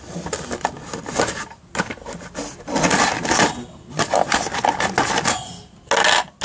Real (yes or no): yes